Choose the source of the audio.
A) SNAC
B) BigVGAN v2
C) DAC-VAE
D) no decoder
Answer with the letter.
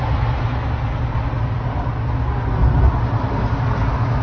D